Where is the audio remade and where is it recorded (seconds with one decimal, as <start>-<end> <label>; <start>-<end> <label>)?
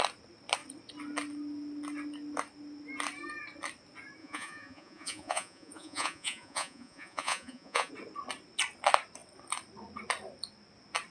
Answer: 0.0-4.2 recorded; 4.2-7.9 remade; 7.9-11.1 recorded